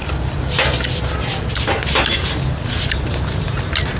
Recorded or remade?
recorded